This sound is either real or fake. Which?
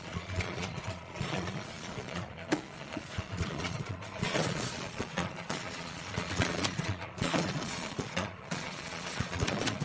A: fake